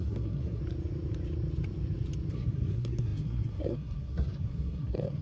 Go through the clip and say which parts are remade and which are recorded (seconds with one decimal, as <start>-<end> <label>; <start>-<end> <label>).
0.0-0.6 remade; 0.6-2.3 recorded; 2.3-5.2 remade